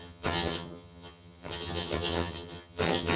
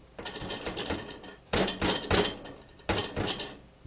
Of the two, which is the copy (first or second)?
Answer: first